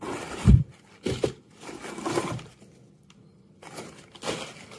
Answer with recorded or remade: recorded